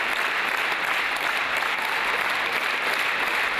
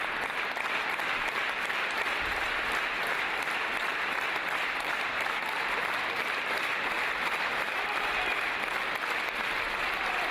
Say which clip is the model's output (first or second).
second